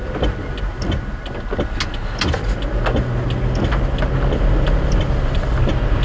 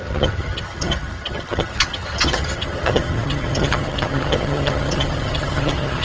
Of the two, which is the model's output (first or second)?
second